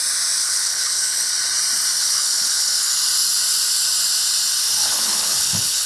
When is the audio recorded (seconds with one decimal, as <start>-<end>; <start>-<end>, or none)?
0.0-0.4; 1.3-2.0; 2.9-4.8